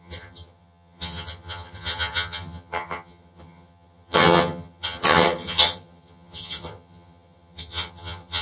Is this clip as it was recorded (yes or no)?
no